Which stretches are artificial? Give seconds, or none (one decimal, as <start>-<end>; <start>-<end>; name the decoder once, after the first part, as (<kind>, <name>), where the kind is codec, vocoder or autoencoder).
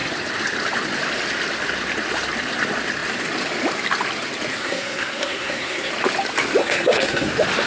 4.5-5.9 (codec, SNAC); 6.6-7.3